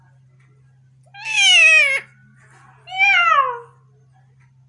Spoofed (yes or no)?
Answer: no